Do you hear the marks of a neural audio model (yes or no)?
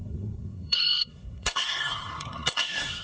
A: yes